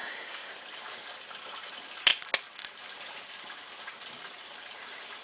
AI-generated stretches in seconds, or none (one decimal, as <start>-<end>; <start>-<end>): 0.0-0.5